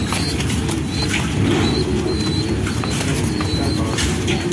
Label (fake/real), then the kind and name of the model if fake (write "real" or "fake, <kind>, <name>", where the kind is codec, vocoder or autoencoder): fake, vocoder, BigVGAN v2